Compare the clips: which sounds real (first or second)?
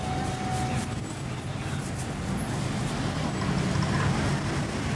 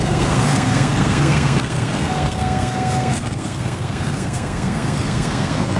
first